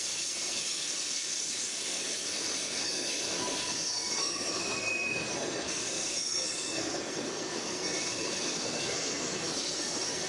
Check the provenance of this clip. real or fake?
fake